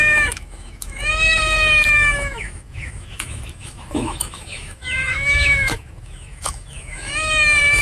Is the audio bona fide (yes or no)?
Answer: no